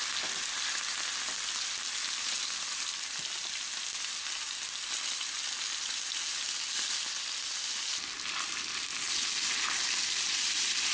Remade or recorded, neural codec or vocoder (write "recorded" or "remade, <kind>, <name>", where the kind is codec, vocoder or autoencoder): recorded